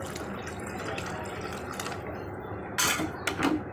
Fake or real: real